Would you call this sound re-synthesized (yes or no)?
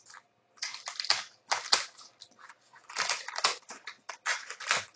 no